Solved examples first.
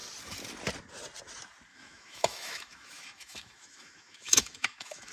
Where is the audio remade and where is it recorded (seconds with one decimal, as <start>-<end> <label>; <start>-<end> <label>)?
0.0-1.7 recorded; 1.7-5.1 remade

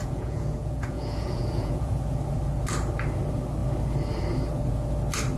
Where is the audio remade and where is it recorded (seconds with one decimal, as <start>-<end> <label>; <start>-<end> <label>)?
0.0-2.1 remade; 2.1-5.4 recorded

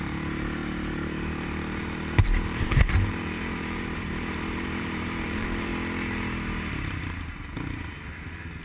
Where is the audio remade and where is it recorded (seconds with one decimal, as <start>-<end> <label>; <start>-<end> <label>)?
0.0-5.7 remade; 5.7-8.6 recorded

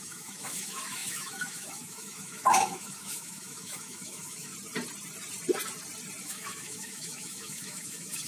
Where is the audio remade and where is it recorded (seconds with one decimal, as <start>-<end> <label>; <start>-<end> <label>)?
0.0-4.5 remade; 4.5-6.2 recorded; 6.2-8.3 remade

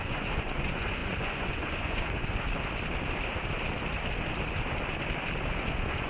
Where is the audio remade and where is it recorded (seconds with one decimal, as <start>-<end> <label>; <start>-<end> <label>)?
0.0-2.3 remade; 2.3-5.6 recorded; 5.6-6.1 remade

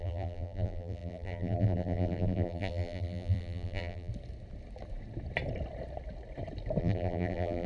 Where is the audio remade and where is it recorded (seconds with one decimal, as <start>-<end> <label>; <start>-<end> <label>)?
0.0-4.1 remade; 4.1-6.8 recorded; 6.8-7.7 remade